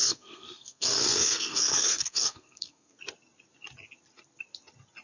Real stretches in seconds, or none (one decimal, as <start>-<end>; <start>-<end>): 3.0-5.0